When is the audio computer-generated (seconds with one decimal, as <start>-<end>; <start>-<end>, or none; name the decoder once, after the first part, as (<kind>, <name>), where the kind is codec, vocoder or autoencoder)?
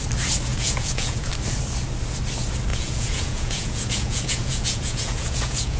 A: 0.5-1.3 (vocoder, Vocos); 2.7-5.8